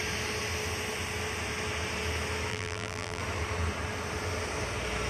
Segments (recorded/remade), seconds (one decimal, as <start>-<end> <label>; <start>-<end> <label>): 0.0-2.5 recorded; 2.5-3.2 remade; 3.2-5.1 recorded